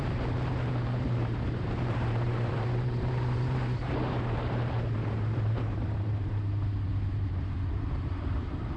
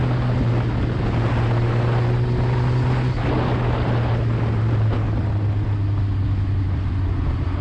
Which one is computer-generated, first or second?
first